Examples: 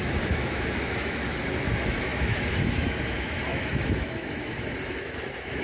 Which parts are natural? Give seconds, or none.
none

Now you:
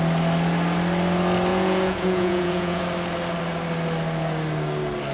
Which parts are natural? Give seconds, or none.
0.0-1.5; 2.8-5.1

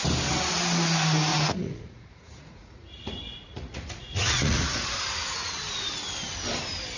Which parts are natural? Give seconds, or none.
0.0-1.3; 5.5-7.0

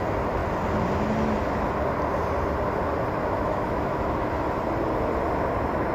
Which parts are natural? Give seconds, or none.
0.0-3.2; 4.4-5.9